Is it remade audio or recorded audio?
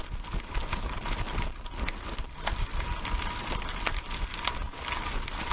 recorded